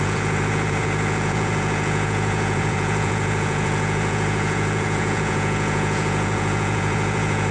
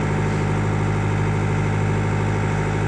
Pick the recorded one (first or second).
second